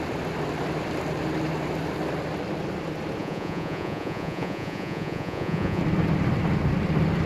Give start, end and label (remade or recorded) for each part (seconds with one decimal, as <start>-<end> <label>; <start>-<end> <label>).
0.0-3.2 recorded; 3.2-5.8 remade; 5.8-7.3 recorded